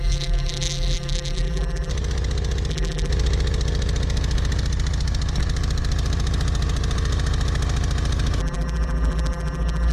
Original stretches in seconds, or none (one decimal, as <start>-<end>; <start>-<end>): 1.9-2.7; 3.1-8.4